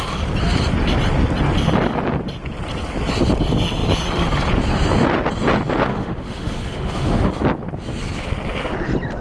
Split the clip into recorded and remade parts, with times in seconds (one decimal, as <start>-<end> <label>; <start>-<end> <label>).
0.0-5.9 recorded; 5.9-7.3 remade; 7.3-9.2 recorded